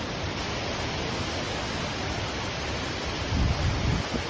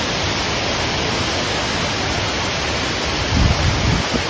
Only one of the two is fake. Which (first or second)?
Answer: first